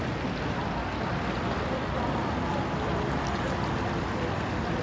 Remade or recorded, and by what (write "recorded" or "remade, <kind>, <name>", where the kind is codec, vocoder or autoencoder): recorded